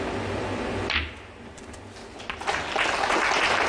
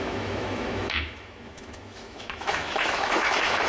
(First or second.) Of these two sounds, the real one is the first